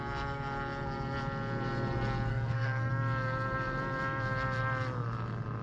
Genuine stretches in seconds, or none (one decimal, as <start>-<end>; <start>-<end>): 0.0-2.3; 2.9-5.6